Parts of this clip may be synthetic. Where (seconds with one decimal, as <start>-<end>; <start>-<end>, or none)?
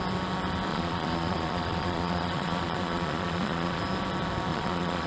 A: 0.7-3.8; 4.5-5.1